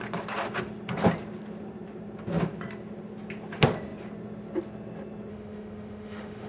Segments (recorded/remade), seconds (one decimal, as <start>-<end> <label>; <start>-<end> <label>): 0.0-5.3 recorded; 5.3-6.5 remade